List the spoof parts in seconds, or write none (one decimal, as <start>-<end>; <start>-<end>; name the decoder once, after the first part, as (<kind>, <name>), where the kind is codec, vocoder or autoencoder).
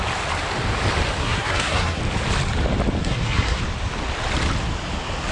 1.2-2.0 (codec, SNAC); 3.0-3.6